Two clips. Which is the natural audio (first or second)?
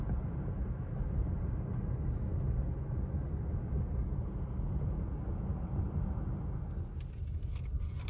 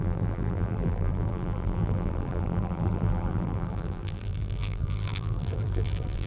first